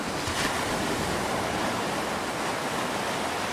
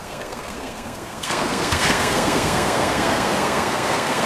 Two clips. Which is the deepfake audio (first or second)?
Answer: second